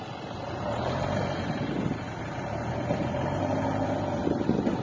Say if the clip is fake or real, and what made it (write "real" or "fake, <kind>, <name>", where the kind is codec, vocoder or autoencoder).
real